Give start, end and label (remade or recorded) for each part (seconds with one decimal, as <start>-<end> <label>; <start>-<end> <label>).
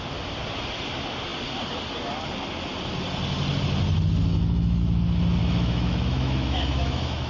0.0-4.3 recorded; 4.3-4.8 remade; 4.8-5.4 recorded; 5.4-7.3 remade